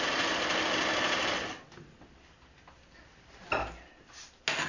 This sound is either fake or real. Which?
real